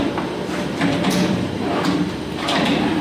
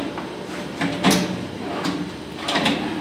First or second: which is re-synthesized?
first